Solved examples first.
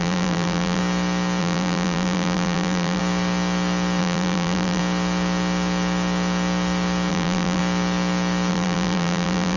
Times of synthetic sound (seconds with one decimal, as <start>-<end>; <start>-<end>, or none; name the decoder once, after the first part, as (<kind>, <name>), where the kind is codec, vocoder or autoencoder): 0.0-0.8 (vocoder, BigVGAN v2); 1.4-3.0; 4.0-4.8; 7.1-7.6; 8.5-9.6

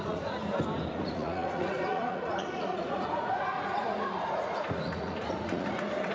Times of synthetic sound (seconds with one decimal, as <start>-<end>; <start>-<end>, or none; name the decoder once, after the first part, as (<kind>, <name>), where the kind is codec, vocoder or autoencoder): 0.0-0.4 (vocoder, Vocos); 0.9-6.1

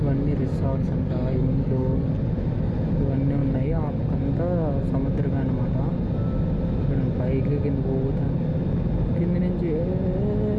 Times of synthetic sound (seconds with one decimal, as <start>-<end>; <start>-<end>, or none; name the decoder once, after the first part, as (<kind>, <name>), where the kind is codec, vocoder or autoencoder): 0.5-2.1 (codec, DAC); 3.4-4.0